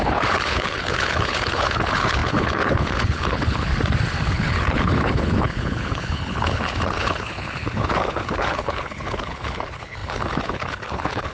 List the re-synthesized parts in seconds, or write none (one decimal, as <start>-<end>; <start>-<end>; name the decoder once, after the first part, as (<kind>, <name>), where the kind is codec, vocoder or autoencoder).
0.0-3.7 (codec, HILCodec); 4.3-11.3